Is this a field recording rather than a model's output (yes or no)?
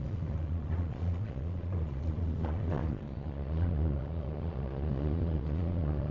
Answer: no